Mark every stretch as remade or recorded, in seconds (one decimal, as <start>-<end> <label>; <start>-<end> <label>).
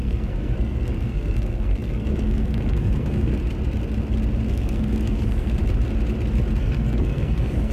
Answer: 0.0-3.3 remade; 3.3-4.5 recorded; 4.5-5.6 remade; 5.6-6.6 recorded; 6.6-7.7 remade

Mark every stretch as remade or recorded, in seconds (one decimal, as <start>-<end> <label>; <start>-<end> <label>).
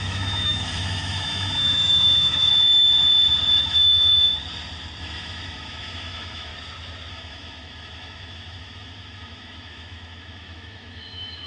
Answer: 0.0-2.5 remade; 2.5-3.6 recorded; 3.6-4.3 remade; 4.3-5.0 recorded; 5.0-6.5 remade; 6.5-7.1 recorded; 7.1-11.5 remade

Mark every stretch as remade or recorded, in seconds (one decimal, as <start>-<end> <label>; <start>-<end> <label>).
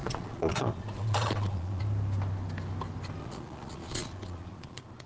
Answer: 0.0-1.8 remade; 1.8-3.2 recorded; 3.2-5.1 remade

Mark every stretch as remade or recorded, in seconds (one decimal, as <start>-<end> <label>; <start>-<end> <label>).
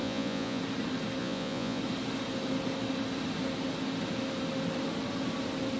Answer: 0.0-0.6 remade; 0.6-1.2 recorded; 1.2-1.8 remade; 1.8-5.8 recorded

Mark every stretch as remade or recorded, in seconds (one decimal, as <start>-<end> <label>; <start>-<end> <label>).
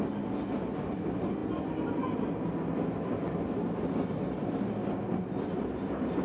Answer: 0.0-6.2 recorded